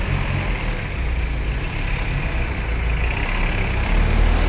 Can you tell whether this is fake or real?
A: real